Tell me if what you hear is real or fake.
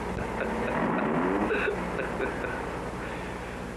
real